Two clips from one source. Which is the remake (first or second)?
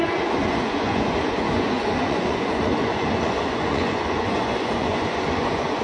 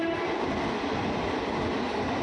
first